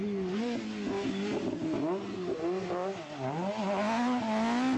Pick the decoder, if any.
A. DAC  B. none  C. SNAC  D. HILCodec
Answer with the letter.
B